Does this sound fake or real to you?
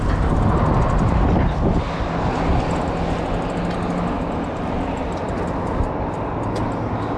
real